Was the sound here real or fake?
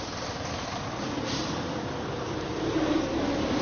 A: real